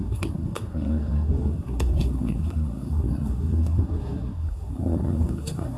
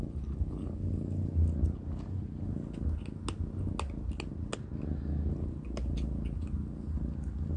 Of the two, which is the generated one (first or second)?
first